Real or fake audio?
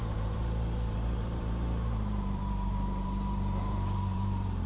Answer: fake